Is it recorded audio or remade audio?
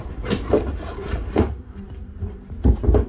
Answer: remade